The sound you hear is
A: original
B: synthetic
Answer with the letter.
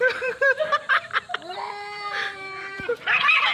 B